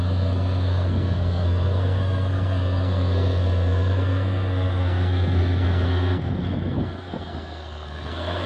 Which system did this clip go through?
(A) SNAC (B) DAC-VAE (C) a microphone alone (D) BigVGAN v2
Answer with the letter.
A